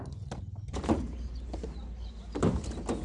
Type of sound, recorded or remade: recorded